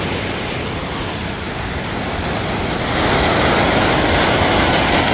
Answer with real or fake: real